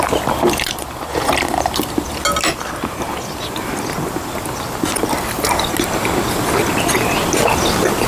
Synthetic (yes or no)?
no